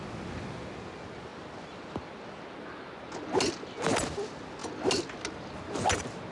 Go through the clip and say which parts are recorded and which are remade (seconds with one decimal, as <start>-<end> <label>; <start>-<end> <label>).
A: 0.0-6.3 recorded